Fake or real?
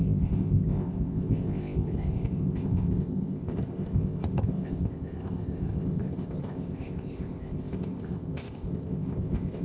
fake